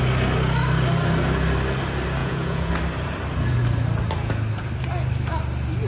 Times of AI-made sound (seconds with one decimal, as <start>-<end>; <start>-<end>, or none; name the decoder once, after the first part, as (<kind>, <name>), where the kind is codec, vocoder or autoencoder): 2.2-2.7 (vocoder, Vocos)